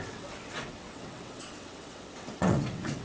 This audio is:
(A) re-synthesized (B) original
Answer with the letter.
A